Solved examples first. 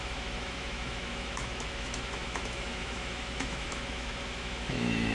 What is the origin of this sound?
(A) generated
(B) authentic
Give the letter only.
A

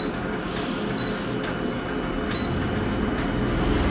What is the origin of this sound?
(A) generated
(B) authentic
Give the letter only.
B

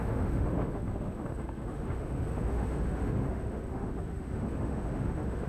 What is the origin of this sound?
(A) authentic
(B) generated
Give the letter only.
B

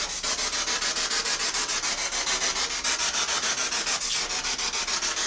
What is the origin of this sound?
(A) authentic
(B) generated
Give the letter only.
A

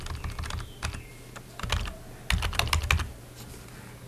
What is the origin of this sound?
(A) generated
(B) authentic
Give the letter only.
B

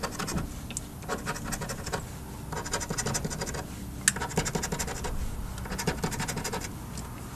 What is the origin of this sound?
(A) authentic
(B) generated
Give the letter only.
A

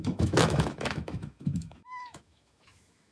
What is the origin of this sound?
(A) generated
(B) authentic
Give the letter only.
A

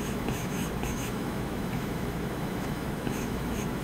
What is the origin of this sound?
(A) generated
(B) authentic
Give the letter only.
A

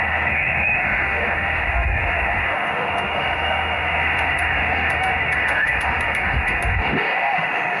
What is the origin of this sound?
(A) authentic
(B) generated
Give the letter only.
B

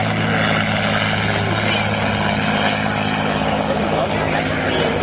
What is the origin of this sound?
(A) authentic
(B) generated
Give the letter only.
A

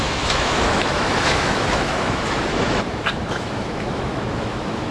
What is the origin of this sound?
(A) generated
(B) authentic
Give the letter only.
A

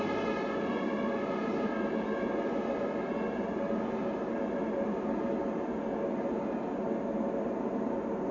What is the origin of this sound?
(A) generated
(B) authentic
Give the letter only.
B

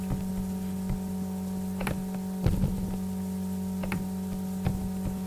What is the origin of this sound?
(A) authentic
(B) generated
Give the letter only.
A